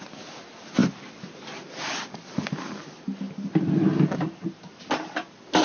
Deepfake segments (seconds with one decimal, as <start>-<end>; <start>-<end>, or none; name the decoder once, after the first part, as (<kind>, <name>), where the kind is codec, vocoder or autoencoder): none